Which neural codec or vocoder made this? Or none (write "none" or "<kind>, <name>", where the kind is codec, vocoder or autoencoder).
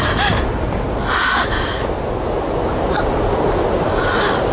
none